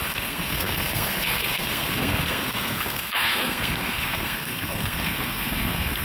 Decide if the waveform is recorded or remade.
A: remade